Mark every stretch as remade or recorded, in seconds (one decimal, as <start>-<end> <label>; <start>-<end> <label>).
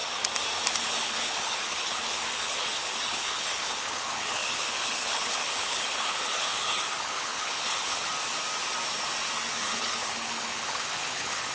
0.0-0.7 recorded; 0.7-8.1 remade; 8.1-9.6 recorded; 9.6-11.5 remade